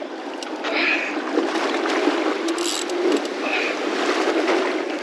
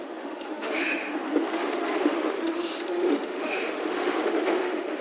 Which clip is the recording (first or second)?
first